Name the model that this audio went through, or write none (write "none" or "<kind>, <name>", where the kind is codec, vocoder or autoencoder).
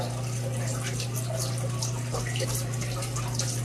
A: none